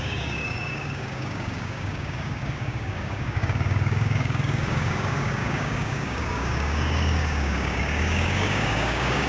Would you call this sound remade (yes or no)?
yes